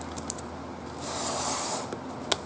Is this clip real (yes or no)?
yes